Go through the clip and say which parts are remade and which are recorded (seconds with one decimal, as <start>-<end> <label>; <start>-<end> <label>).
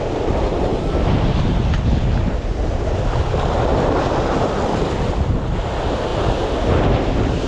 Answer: 0.0-7.5 recorded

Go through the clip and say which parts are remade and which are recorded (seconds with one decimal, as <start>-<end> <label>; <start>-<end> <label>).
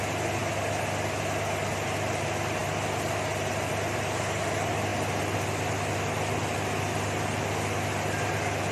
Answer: 0.0-8.7 recorded